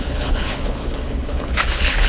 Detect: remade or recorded remade